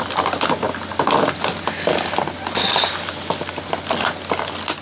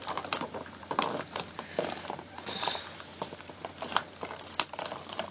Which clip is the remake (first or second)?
second